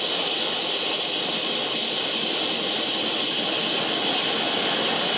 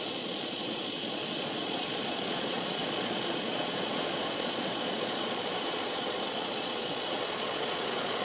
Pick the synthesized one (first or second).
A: second